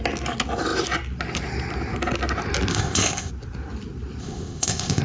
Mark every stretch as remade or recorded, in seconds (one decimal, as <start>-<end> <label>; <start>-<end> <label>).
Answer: 0.0-2.7 recorded; 2.7-3.3 remade; 3.3-4.2 recorded; 4.2-5.0 remade